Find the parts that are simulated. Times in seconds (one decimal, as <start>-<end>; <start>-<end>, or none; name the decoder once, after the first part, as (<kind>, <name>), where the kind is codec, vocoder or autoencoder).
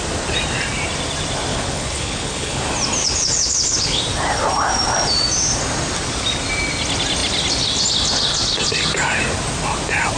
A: 1.5-2.6 (codec, HILCodec); 3.0-4.0